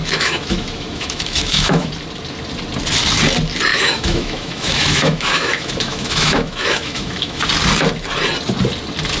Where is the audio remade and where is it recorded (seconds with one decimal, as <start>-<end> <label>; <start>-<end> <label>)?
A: 0.0-1.9 remade; 1.9-3.7 recorded; 3.7-7.4 remade; 7.4-9.2 recorded

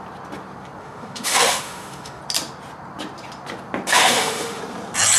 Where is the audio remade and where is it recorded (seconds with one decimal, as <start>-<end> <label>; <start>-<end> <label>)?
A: 0.0-0.8 recorded; 0.8-2.2 remade; 2.2-3.9 recorded; 3.9-4.6 remade; 4.6-5.2 recorded